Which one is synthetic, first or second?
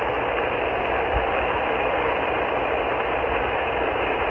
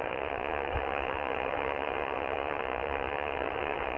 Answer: second